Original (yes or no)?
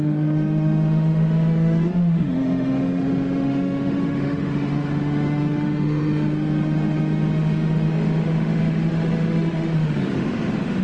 no